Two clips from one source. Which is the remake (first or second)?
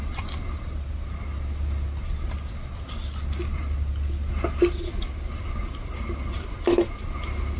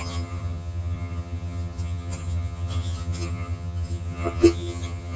second